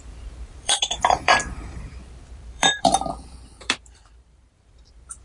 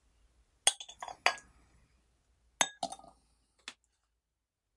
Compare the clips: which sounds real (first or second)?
second